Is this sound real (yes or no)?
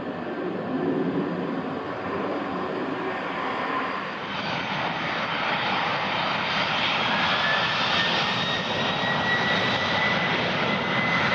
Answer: yes